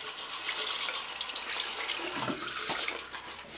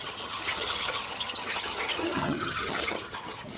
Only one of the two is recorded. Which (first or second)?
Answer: first